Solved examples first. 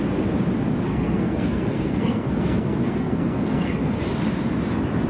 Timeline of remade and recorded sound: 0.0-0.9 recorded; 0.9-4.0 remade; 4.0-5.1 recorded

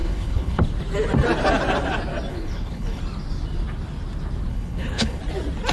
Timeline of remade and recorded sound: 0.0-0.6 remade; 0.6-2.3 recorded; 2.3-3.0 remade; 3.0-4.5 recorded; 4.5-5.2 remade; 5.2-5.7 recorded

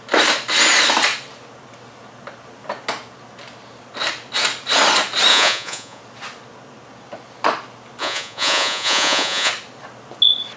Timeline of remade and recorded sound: 0.0-5.3 recorded; 5.3-6.0 remade; 6.0-8.0 recorded; 8.0-9.5 remade; 9.5-10.6 recorded

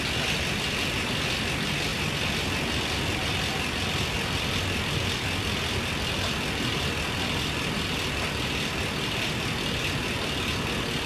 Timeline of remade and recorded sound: 0.0-11.1 recorded